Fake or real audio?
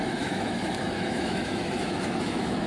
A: fake